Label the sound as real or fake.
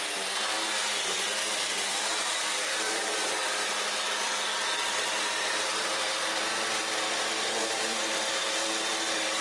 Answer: fake